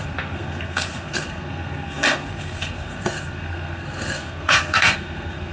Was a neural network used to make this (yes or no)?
yes